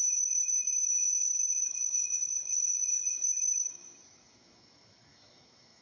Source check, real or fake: fake